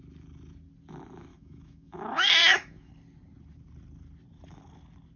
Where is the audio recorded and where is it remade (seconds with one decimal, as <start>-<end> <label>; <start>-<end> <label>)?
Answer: 0.0-1.3 recorded; 1.3-2.9 remade; 2.9-5.2 recorded